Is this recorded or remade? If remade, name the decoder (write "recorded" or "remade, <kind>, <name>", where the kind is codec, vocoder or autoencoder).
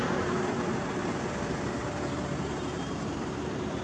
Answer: remade, vocoder, BigVGAN v2